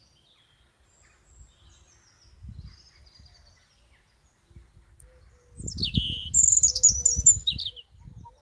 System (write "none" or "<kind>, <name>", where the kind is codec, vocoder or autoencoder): none